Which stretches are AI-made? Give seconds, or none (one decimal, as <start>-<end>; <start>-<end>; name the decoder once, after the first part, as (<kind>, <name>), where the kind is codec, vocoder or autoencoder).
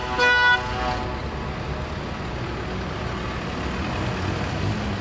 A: none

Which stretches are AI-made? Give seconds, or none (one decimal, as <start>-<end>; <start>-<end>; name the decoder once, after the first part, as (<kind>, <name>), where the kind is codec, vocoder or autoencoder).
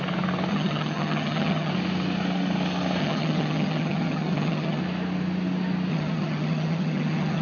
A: 0.5-1.7 (vocoder, HiFi-GAN); 3.0-4.8; 5.9-7.4